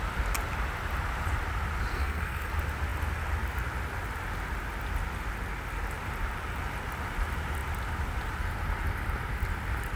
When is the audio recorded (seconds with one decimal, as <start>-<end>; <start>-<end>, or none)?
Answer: 0.0-1.9; 2.5-10.0